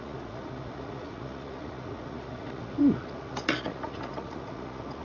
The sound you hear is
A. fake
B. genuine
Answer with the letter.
A